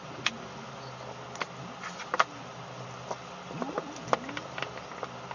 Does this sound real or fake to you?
real